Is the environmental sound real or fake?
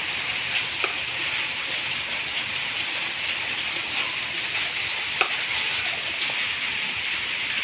real